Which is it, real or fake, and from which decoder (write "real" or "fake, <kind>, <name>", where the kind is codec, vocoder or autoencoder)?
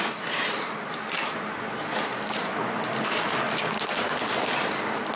real